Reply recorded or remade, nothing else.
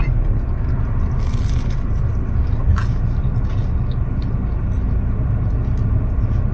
recorded